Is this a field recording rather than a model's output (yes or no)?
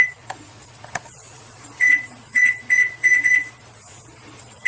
no